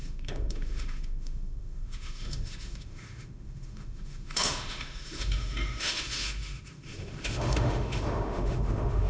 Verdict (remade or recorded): remade